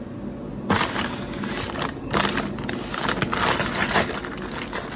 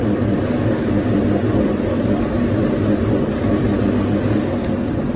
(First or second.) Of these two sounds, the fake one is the second